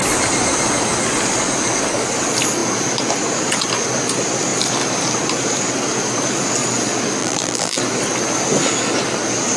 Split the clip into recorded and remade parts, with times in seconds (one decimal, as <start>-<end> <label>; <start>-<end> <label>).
0.0-7.2 recorded; 7.2-7.8 remade; 7.8-9.6 recorded